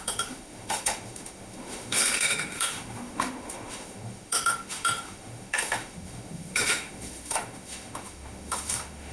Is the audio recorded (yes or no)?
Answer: no